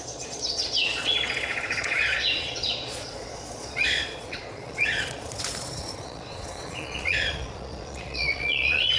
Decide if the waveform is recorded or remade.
remade